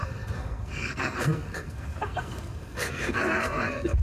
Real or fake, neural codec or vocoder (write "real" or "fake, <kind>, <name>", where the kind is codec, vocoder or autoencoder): fake, codec, SNAC